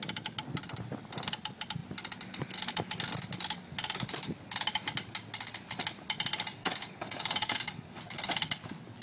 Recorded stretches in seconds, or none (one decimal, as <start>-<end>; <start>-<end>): 0.0-6.6; 8.0-9.0